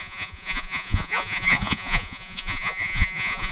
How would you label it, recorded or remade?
remade